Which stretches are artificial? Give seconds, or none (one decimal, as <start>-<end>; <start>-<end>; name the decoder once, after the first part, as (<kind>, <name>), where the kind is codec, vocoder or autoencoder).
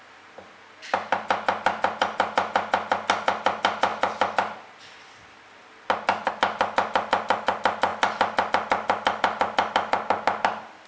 none